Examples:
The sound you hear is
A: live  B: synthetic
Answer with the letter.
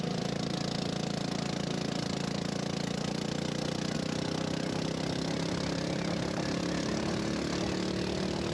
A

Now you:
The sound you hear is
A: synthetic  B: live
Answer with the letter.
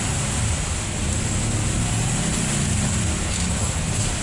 B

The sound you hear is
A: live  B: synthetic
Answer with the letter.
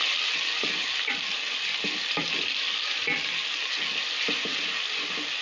A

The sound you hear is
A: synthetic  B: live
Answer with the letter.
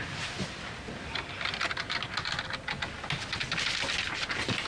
B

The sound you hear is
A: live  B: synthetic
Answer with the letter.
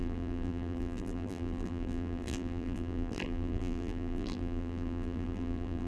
B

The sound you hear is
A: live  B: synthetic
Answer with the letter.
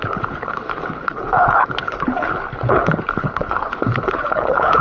B